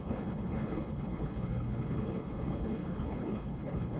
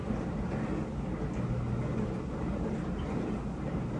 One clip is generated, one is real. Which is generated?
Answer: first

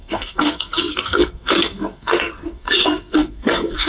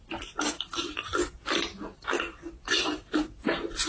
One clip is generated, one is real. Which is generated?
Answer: first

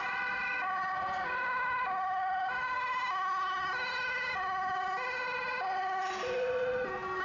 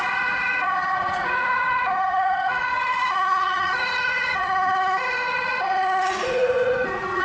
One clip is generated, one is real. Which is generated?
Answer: second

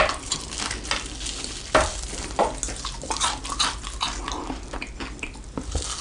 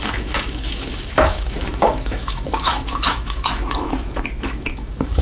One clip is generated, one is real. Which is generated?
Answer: second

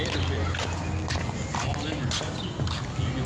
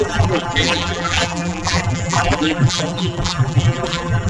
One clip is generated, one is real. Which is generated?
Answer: second